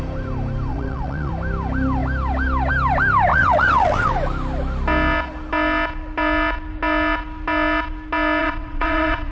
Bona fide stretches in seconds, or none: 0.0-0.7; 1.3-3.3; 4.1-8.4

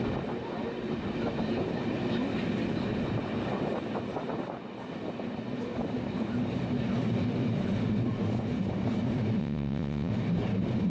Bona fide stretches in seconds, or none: 0.0-9.4; 10.1-10.9

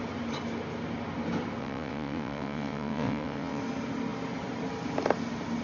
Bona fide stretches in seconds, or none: 0.0-1.6; 3.6-5.6

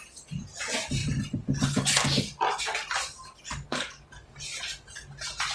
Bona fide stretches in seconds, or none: 0.0-5.5

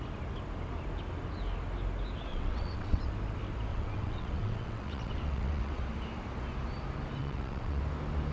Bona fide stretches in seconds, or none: 0.0-2.3; 3.1-3.7; 5.8-7.2; 7.8-8.3

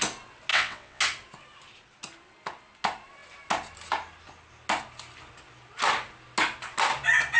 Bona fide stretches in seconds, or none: 0.0-0.5; 1.0-7.4